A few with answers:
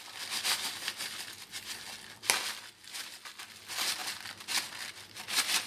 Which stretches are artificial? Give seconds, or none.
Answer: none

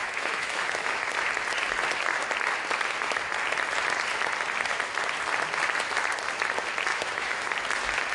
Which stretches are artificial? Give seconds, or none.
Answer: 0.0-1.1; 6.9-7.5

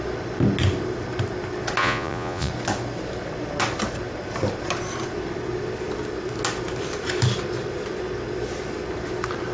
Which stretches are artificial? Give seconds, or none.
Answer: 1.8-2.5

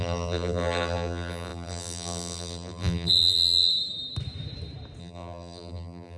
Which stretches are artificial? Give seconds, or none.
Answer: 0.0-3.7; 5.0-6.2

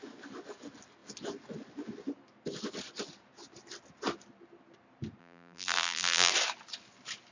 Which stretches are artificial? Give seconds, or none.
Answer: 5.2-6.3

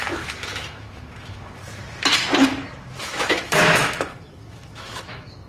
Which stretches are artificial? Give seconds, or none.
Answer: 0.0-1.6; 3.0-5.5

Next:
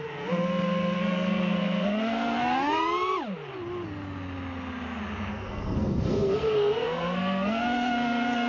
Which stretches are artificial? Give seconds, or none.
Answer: 0.0-2.8; 5.3-8.5